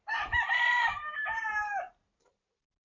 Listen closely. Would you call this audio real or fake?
fake